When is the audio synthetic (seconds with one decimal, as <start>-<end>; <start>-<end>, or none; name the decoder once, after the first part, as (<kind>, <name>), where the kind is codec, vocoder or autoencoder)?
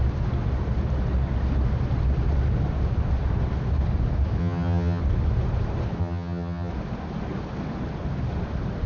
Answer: 4.4-5.0 (vocoder, HiFi-GAN); 6.0-6.7